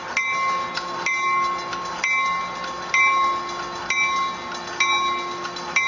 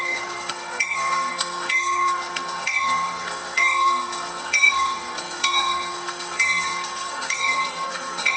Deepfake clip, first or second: second